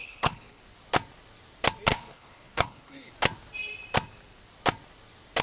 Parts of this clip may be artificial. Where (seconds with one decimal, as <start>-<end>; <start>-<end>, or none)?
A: 0.0-0.6; 1.9-3.1